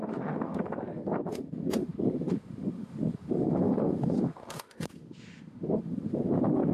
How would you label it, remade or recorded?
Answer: remade